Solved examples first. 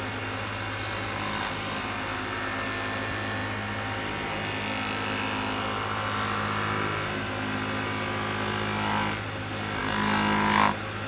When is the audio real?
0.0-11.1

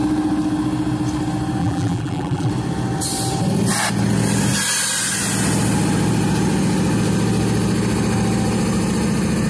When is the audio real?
0.0-1.6; 2.5-9.5

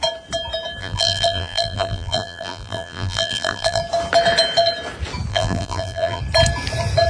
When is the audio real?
0.0-0.8; 3.8-5.3; 6.2-7.1

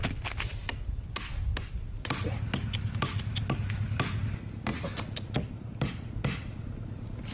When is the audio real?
0.0-7.3

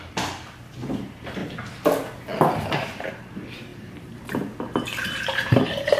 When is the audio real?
1.4-2.7

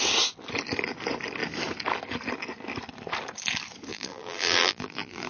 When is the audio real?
0.0-3.9

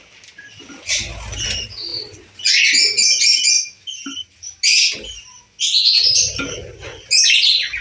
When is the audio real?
0.0-7.8

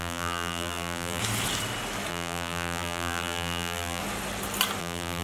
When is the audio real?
1.2-2.1; 4.0-4.8